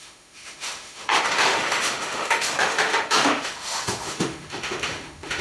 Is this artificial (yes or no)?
yes